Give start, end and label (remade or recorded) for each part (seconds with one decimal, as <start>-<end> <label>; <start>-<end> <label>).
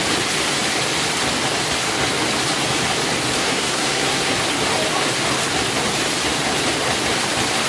0.0-3.4 recorded; 3.4-4.4 remade; 4.4-7.7 recorded